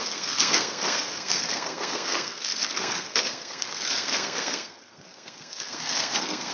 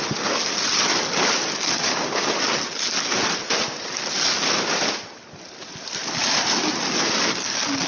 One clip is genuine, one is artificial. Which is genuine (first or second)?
second